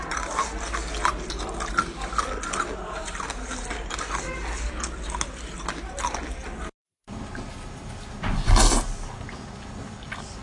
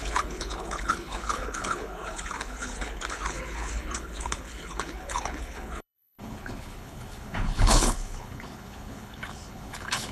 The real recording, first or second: first